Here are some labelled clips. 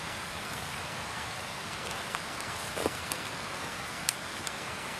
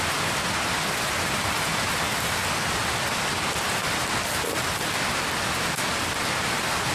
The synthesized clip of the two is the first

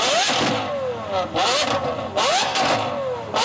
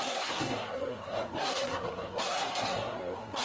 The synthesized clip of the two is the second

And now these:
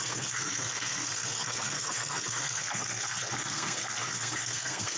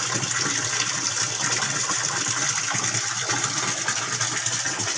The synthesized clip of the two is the first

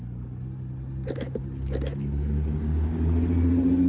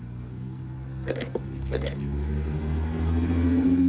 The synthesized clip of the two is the second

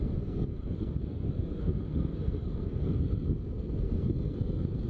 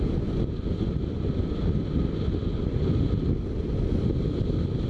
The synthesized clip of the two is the first